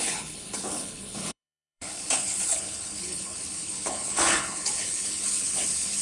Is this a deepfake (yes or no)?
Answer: yes